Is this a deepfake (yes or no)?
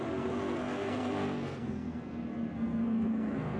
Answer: yes